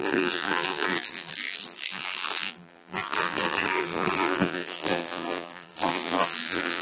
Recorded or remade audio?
remade